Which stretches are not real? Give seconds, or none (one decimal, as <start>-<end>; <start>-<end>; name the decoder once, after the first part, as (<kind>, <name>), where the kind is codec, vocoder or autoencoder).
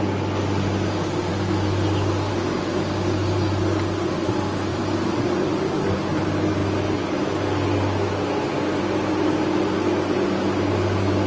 4.7-5.8 (vocoder, BigVGAN v2)